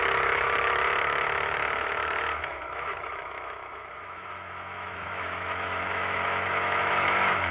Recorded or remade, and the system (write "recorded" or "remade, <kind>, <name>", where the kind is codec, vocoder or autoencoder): remade, autoencoder, DAC-VAE